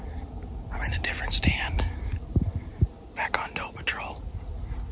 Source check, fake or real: real